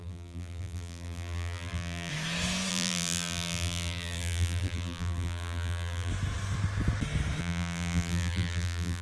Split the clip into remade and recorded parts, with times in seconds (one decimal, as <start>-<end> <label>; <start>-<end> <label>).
0.0-2.1 remade; 2.1-2.7 recorded; 2.7-6.1 remade; 6.1-7.4 recorded; 7.4-9.0 remade